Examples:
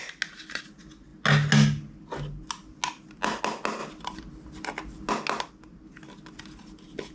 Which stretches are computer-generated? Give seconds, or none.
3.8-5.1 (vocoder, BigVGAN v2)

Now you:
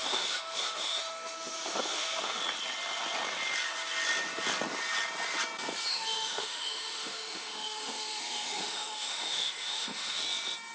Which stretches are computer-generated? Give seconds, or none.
0.0-2.4 (autoencoder, DAC-VAE); 5.9-10.2

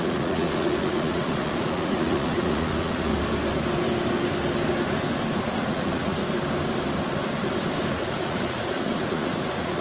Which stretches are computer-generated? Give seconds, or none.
0.0-3.1 (vocoder, Vocos); 5.5-6.2; 7.9-9.8

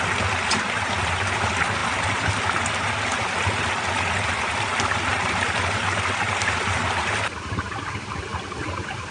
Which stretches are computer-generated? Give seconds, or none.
none

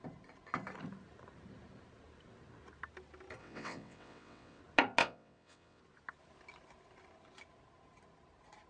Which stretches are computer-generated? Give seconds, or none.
3.4-4.6 (vocoder, WaveNeXt); 5.0-5.8

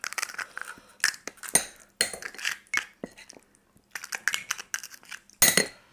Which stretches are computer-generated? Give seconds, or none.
none